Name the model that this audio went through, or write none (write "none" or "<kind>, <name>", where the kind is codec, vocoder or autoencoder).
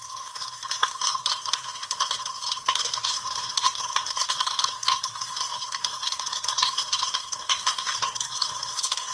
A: codec, SNAC